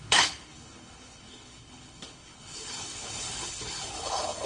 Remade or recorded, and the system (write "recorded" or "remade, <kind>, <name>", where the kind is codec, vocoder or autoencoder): remade, codec, HILCodec